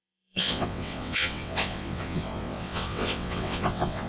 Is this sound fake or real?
fake